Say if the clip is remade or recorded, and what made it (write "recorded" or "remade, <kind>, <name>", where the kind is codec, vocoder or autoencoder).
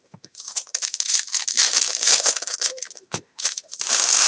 remade, autoencoder, DAC-VAE